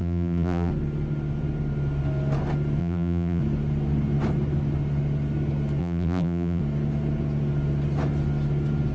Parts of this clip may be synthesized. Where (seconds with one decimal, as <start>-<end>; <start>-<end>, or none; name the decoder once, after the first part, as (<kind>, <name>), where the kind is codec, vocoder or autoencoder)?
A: 0.0-0.7 (vocoder, BigVGAN v2); 2.8-3.4; 5.8-6.6